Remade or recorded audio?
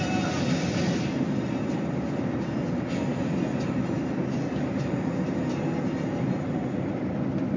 recorded